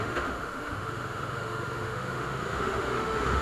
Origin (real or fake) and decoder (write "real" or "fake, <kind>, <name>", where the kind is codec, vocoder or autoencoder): fake, autoencoder, DAC-VAE